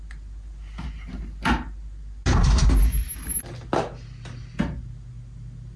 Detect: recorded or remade recorded